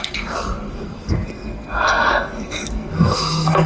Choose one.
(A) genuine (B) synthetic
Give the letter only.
B